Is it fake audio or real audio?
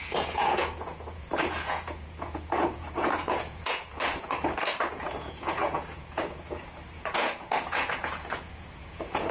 fake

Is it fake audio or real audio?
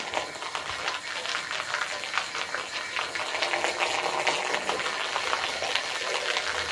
real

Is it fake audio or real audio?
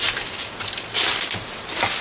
real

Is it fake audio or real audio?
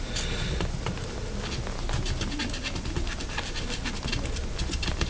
real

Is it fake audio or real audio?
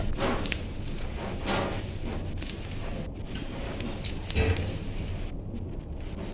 real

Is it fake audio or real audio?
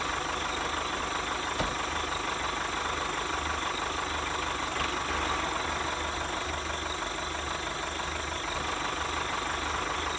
real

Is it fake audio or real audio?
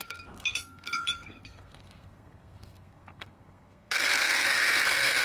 fake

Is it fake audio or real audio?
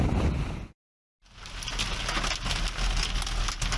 real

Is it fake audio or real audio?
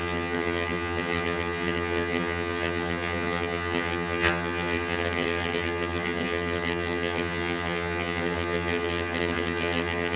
fake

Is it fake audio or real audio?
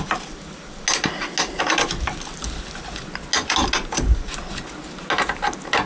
real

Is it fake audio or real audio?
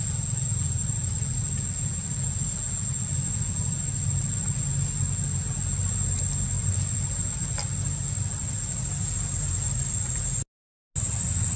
real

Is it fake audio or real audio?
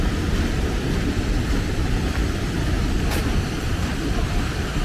fake